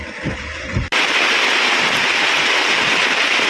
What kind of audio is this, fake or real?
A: fake